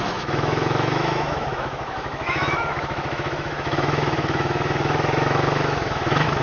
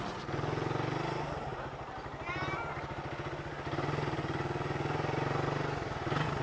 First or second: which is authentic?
second